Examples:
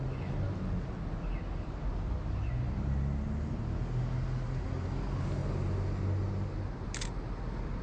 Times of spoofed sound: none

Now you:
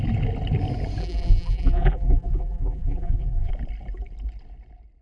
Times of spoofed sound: 1.0-3.5

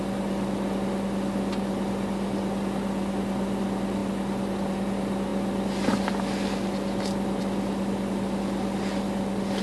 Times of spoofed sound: 0.0-4.0; 4.7-5.3; 7.4-9.6

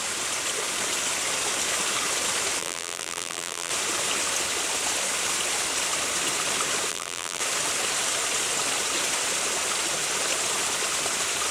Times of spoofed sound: 2.6-3.7; 6.9-7.4